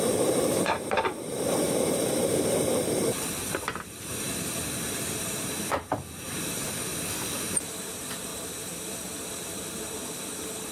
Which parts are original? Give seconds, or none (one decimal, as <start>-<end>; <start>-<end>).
6.9-7.4; 8.3-10.7